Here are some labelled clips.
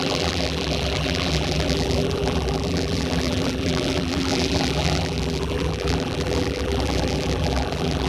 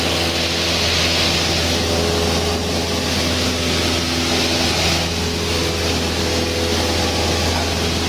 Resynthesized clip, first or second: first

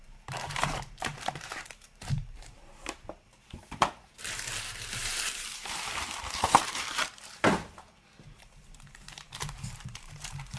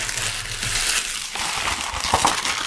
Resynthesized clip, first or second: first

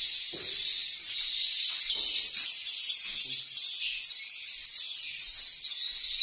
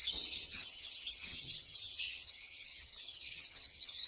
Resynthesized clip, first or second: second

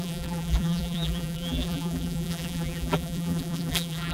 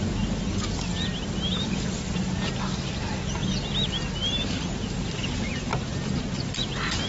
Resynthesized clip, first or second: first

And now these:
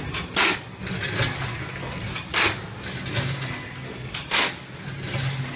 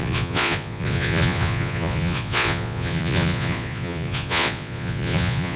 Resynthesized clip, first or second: second